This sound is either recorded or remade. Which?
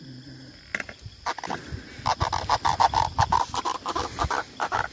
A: recorded